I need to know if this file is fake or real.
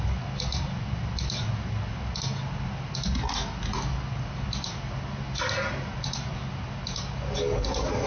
real